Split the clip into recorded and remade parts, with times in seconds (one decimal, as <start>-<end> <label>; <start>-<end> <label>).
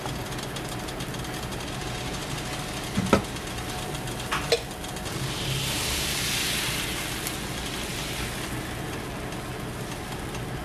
0.0-10.6 recorded